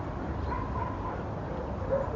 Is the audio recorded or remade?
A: recorded